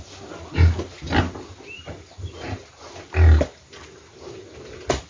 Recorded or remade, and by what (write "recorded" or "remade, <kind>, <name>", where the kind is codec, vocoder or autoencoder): recorded